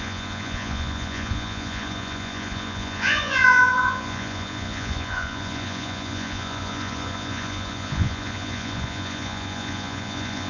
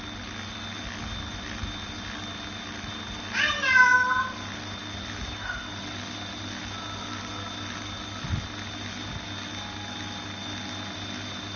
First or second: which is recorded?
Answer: second